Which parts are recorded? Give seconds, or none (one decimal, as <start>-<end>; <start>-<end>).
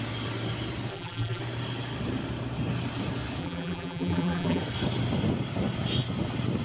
0.0-0.9; 1.4-3.4; 4.6-6.6